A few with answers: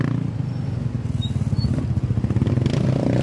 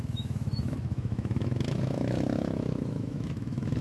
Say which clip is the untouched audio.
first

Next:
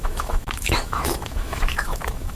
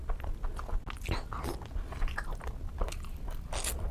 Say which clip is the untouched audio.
second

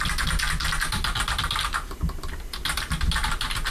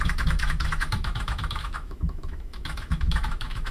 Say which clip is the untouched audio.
first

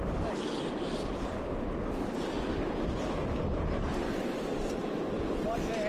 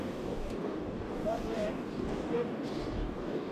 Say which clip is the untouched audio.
first